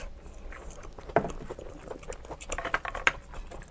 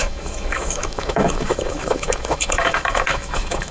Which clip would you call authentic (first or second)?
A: first